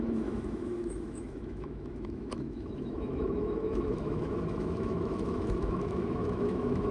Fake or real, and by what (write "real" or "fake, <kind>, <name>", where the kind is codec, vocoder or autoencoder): fake, autoencoder, DAC-VAE